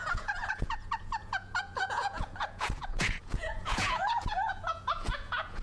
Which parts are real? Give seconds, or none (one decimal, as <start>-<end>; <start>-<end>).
none